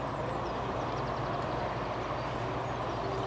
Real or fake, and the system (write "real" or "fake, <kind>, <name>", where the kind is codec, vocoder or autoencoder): real